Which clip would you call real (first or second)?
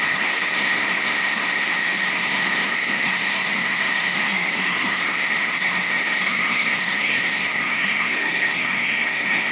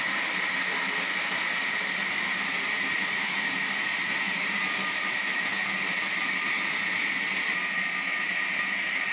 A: second